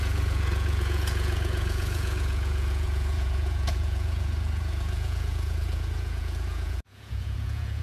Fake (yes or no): yes